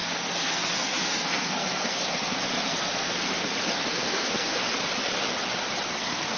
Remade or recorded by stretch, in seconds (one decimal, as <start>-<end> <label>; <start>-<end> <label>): 0.0-4.6 remade; 4.6-5.9 recorded; 5.9-6.4 remade